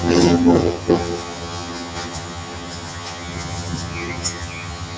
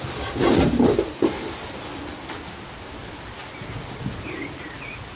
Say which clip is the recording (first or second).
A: second